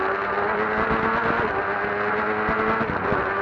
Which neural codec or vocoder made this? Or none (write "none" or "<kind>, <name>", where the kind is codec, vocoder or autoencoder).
none